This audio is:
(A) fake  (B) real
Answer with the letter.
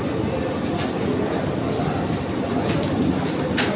B